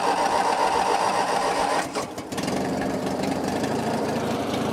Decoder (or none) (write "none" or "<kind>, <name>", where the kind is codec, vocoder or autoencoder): vocoder, BigVGAN v2